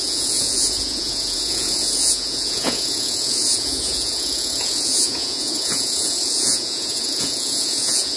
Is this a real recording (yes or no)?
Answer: no